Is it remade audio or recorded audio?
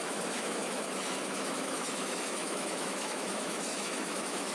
remade